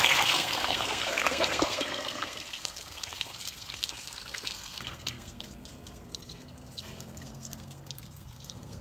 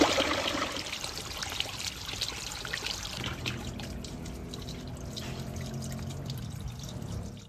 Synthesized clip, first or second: first